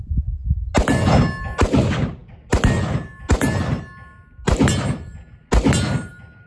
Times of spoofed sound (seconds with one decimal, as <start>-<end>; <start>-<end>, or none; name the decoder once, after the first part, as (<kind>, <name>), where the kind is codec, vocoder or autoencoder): none